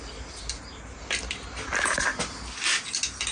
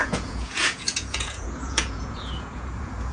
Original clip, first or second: first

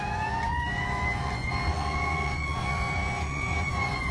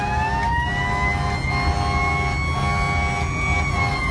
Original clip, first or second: second